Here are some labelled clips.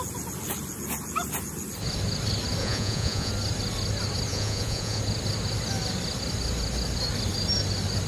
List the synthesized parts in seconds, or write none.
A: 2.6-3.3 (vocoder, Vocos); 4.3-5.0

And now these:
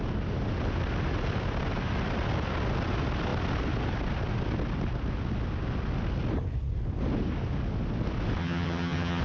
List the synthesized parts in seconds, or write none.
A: 8.4-9.2 (vocoder, HiFi-GAN)

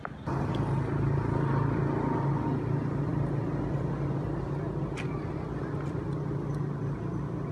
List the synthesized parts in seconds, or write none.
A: none

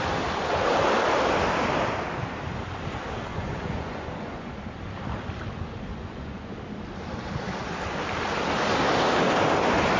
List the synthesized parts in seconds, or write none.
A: 3.3-4.5 (vocoder, Vocos); 5.9-6.5

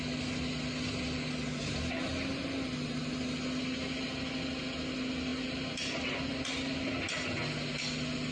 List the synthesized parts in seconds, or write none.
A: none

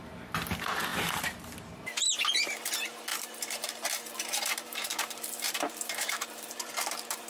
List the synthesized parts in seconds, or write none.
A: 0.9-1.7 (vocoder, BigVGAN v2); 3.1-7.3